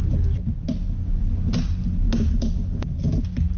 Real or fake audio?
real